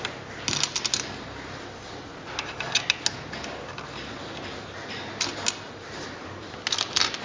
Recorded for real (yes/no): yes